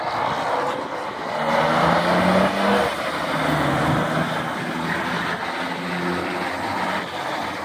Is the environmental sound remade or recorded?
recorded